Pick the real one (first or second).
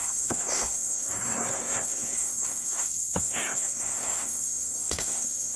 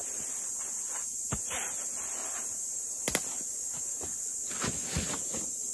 second